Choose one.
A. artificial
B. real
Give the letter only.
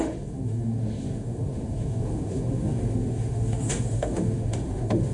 A